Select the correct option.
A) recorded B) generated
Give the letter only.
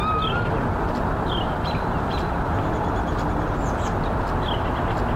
A